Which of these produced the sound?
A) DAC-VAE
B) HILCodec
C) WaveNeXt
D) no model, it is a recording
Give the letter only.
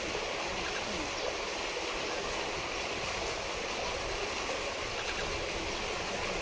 D